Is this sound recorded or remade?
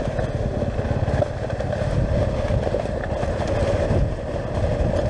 recorded